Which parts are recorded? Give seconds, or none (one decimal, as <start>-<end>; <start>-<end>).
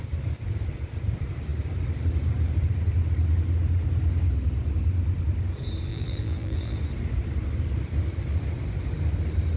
0.0-5.9; 6.8-9.6